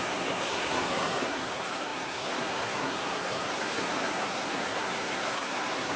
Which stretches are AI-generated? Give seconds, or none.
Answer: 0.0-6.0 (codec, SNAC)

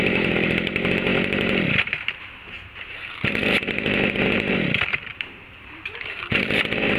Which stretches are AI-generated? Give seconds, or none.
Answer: 0.0-7.0 (vocoder, BigVGAN v2)

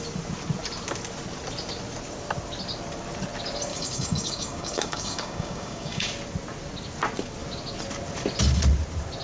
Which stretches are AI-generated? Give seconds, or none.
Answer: 3.7-6.1 (codec, DAC)